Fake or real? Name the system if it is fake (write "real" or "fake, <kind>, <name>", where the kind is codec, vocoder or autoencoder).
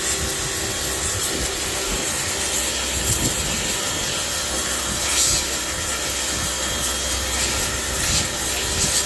real